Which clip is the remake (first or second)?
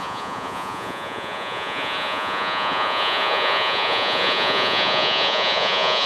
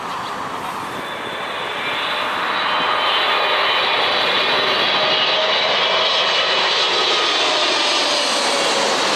first